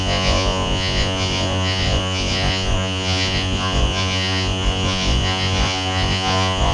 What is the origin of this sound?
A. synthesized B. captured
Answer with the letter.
A